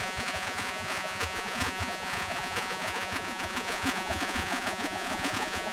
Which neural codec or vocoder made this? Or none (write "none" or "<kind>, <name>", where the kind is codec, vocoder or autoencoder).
vocoder, Vocos